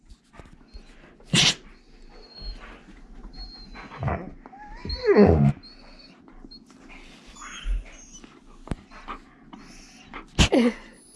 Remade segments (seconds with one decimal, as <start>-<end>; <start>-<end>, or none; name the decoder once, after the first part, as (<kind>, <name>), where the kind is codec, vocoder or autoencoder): 5.0-5.5 (autoencoder, DAC-VAE)